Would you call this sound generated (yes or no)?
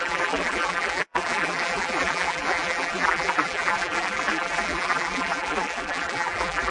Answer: yes